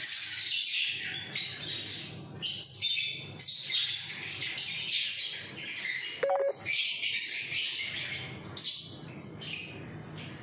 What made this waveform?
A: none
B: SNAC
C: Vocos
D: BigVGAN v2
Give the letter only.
A